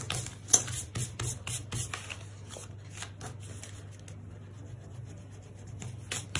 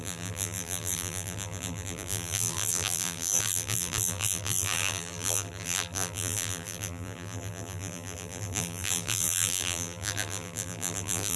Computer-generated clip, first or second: second